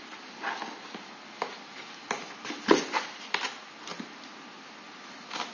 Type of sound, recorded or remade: recorded